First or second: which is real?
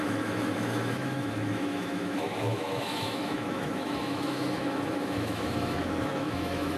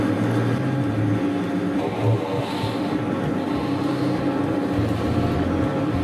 second